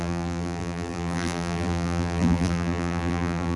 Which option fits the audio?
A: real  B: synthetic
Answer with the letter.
B